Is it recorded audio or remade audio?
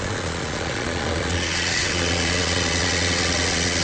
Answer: remade